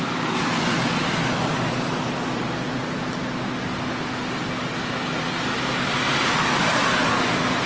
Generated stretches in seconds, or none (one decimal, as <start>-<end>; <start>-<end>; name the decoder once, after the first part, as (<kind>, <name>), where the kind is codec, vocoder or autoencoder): none